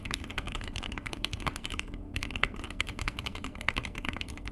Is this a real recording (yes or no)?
no